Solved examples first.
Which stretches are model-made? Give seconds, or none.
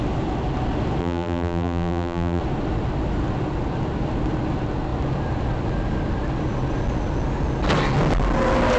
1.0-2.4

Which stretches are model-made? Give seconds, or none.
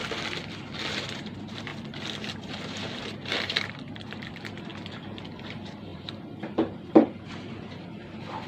0.9-1.7; 2.4-4.7; 5.5-8.5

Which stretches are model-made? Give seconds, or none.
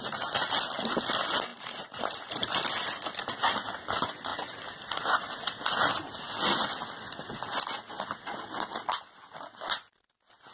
1.5-2.5; 4.3-5.9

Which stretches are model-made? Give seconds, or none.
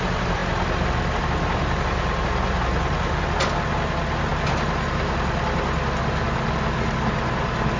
none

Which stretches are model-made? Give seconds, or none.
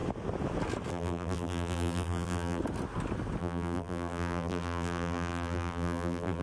0.9-2.6; 3.4-6.4